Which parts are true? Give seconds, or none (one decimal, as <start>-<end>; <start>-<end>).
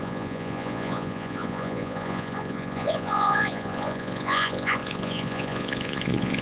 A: none